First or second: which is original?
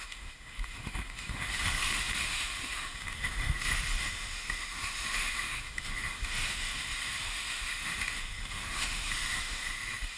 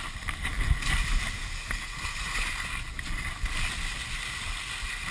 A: second